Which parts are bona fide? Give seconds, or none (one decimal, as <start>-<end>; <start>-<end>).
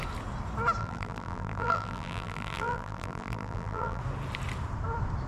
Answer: 0.0-0.8; 4.0-5.3